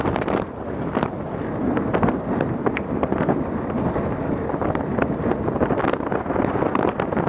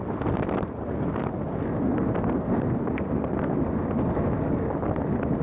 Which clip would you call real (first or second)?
second